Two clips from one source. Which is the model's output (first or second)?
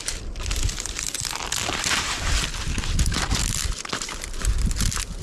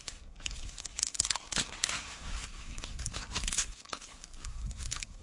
second